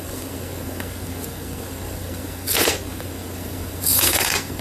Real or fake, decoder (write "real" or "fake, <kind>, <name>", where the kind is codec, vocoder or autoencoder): fake, codec, SNAC